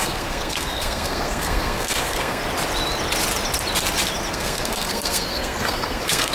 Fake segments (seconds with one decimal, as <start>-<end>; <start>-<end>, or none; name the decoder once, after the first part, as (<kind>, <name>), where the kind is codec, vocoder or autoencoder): 0.0-2.4 (codec, SNAC); 4.3-6.3